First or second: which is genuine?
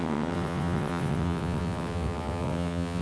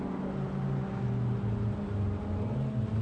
second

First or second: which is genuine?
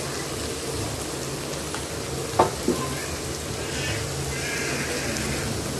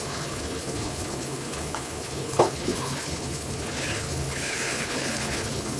first